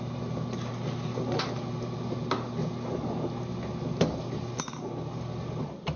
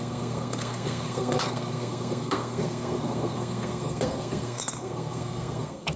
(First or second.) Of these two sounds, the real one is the first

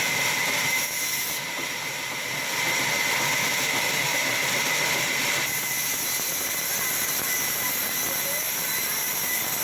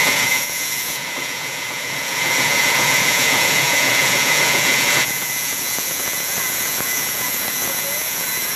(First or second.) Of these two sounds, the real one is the first